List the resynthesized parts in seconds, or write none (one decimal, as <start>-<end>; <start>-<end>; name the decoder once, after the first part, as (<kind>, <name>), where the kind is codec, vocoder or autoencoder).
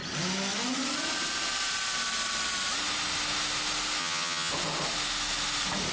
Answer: 4.0-4.5 (vocoder, HiFi-GAN)